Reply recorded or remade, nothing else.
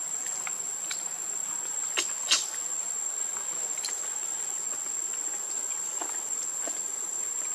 recorded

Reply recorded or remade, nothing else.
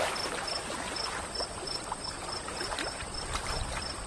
recorded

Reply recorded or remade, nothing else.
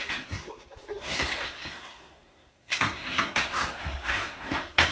remade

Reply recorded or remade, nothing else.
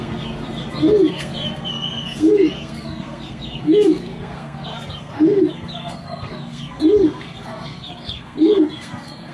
remade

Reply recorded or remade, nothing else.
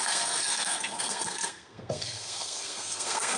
remade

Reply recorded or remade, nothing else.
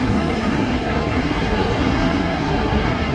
remade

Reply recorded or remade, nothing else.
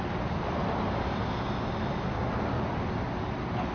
recorded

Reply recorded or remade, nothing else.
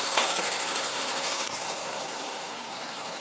remade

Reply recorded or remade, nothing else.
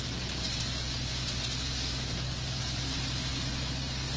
recorded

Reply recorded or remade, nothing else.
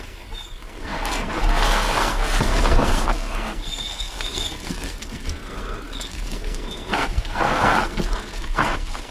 remade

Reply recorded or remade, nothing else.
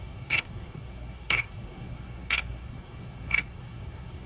remade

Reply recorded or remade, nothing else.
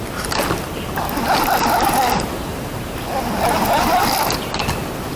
recorded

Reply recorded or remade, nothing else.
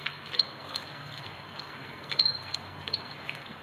remade